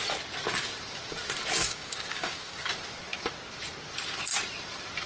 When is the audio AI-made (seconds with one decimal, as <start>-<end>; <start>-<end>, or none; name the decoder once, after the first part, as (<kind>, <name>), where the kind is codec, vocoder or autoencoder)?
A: 1.6-2.7 (codec, DAC)